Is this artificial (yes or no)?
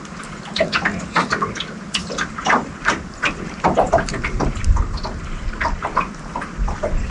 no